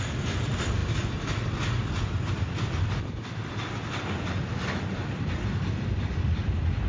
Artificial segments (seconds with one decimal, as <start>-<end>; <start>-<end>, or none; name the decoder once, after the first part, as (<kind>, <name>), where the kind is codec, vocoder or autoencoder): 0.0-0.8 (vocoder, BigVGAN v2); 2.3-6.9